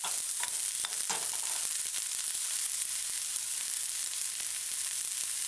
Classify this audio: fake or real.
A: real